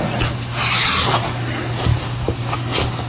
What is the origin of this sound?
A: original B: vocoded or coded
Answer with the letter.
A